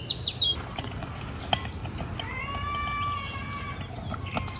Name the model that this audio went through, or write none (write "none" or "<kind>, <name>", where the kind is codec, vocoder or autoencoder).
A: none